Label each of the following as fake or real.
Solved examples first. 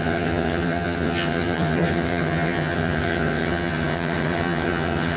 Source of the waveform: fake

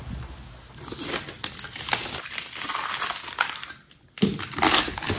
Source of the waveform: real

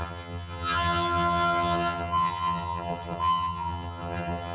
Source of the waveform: fake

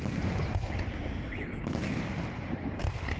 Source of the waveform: real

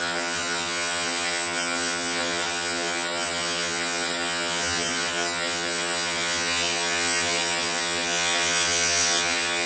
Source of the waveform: fake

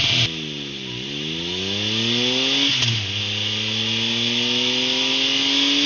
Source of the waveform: real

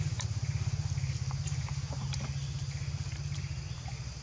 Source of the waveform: real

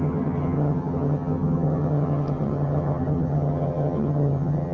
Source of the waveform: fake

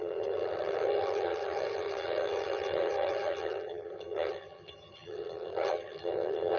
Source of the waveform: fake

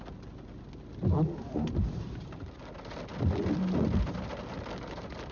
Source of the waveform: real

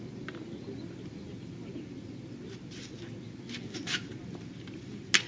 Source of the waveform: real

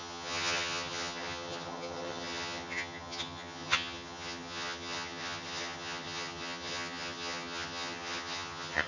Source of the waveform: fake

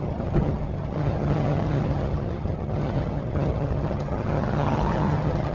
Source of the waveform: fake